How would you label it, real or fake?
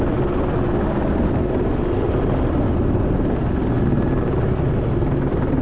real